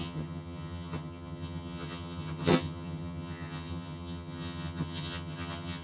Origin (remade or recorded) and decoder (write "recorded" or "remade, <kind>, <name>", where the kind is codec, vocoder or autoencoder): remade, vocoder, HiFi-GAN